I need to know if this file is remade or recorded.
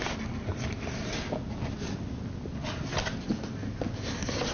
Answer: recorded